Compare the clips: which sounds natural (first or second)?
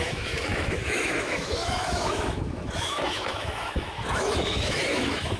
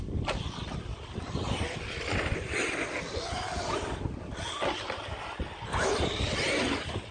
second